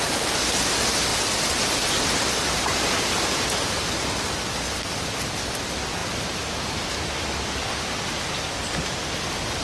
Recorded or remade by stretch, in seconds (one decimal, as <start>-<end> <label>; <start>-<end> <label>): 0.0-9.6 recorded